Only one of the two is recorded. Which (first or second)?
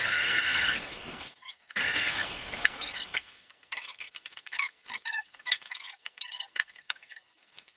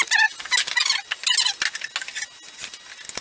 second